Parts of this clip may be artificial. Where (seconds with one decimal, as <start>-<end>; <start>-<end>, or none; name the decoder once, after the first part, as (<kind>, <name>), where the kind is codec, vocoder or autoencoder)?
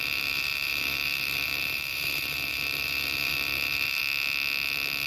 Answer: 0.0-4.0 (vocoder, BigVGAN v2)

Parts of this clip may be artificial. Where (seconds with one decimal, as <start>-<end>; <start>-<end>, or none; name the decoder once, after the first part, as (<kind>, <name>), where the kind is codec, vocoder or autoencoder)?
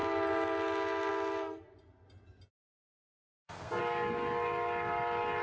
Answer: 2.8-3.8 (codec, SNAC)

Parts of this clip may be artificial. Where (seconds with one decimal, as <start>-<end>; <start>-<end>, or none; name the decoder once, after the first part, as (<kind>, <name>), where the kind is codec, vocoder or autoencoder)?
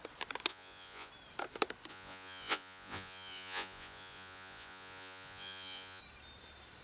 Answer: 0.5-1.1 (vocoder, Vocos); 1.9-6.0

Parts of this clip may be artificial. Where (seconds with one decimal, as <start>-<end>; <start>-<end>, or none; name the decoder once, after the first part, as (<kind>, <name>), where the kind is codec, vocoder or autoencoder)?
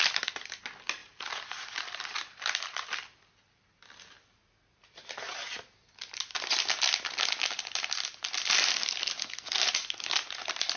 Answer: 9.2-9.7 (codec, SNAC)